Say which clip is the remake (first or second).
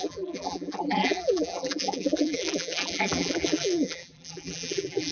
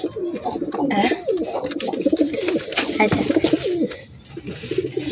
first